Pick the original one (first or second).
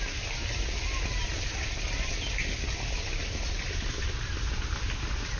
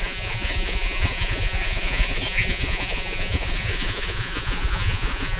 first